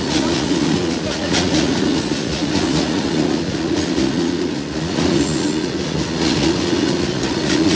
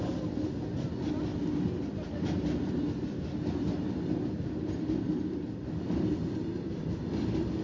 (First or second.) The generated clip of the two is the first